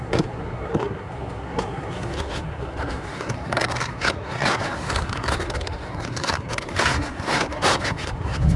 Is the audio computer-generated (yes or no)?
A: yes